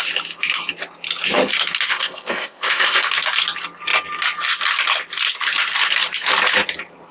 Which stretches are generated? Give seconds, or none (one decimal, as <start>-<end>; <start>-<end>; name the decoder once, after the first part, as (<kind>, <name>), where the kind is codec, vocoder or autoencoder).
1.9-3.0 (codec, ZipCodec)